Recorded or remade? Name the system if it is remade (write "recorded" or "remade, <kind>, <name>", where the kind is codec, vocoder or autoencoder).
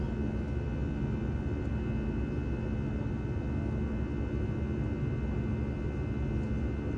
recorded